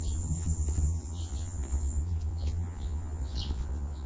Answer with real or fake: fake